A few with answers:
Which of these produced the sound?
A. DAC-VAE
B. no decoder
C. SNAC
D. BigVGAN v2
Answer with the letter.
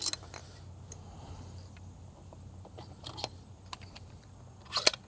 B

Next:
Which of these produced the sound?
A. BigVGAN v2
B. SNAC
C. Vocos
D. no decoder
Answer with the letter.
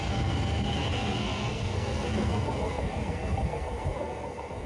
B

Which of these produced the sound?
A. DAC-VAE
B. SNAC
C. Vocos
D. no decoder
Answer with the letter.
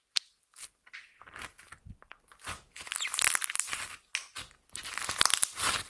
D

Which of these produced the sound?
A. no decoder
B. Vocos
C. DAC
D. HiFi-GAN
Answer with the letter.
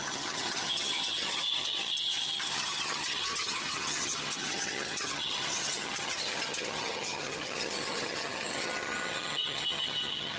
D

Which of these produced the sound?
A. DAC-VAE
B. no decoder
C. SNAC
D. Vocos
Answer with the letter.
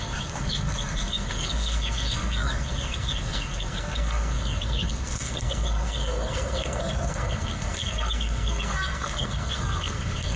C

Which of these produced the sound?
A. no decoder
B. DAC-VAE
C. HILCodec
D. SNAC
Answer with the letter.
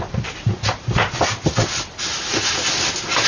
A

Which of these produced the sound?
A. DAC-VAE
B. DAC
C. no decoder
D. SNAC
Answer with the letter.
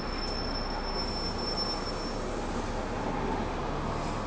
C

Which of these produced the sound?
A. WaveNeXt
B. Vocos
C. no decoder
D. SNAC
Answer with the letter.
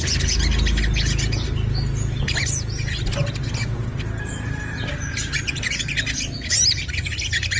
C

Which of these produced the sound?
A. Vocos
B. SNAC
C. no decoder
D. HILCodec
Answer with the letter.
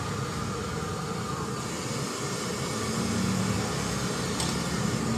C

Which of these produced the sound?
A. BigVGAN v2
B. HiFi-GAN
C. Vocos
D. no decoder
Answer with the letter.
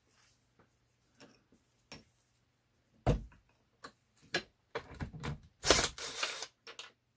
D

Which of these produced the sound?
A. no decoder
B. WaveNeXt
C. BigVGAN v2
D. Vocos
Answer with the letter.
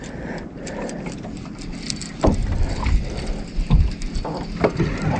A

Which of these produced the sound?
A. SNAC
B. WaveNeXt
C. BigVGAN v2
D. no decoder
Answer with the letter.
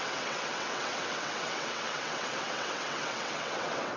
B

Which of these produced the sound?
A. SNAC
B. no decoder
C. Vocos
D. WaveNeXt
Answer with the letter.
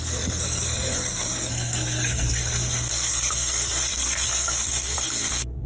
A